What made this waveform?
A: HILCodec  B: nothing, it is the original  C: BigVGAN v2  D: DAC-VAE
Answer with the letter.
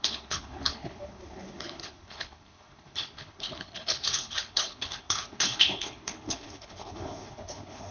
A